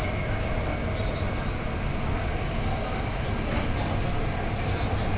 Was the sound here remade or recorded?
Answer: recorded